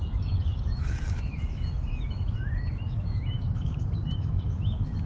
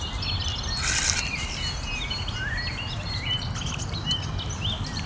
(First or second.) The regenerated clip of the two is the first